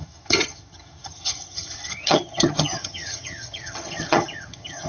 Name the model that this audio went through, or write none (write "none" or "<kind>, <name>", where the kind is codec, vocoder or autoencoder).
vocoder, HiFi-GAN